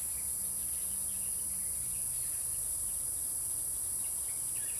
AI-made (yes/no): no